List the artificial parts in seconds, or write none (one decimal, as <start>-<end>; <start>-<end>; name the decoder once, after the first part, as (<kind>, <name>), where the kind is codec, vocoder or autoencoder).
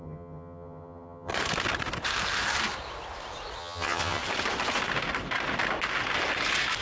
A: 0.0-1.3 (vocoder, HiFi-GAN); 3.6-4.2